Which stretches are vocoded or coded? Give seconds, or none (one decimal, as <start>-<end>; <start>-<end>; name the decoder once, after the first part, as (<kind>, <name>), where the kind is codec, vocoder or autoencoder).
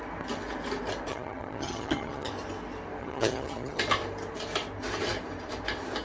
1.1-2.3 (vocoder, HiFi-GAN); 3.0-3.8